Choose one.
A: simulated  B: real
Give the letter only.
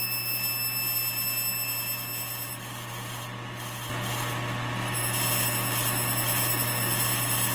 B